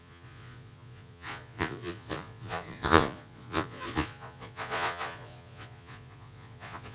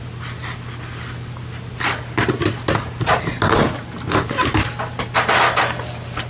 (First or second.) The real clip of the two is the second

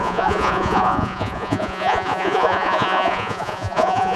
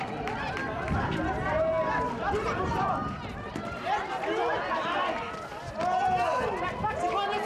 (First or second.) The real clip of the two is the second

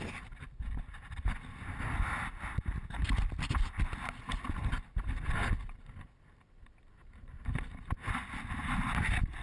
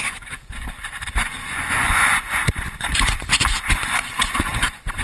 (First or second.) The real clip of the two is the first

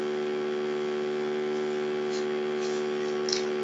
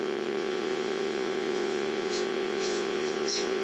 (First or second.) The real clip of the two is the first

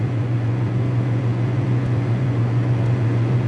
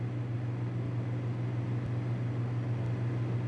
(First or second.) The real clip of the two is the second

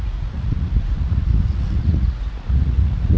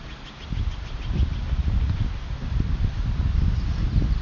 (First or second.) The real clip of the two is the second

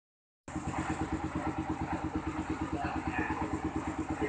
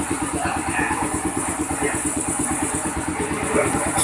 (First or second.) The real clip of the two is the first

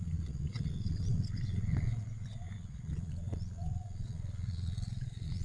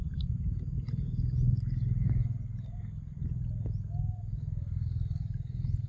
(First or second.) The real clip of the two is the second